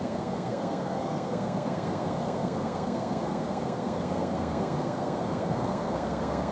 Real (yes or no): no